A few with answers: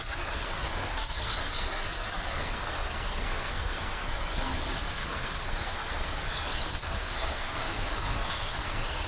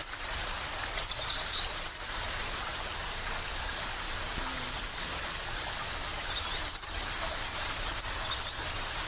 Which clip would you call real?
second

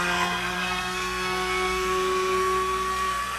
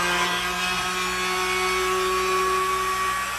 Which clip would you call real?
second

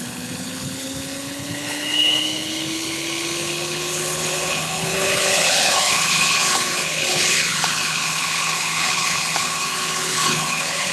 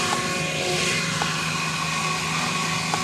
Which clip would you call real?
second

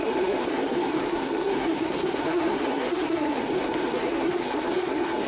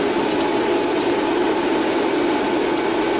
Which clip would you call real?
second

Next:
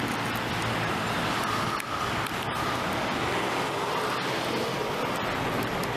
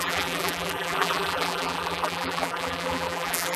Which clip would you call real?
first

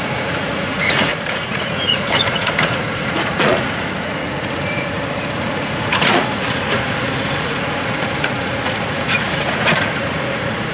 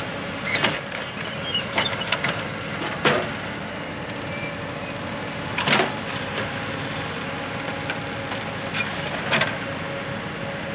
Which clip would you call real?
second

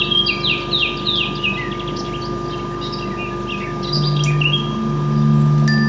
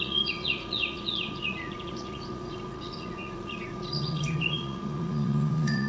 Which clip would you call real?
first